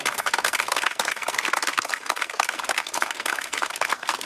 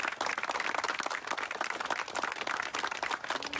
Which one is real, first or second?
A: second